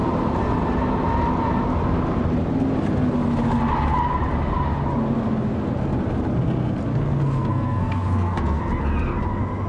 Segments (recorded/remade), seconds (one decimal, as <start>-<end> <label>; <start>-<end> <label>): 0.0-6.9 recorded; 6.9-8.6 remade; 8.6-9.7 recorded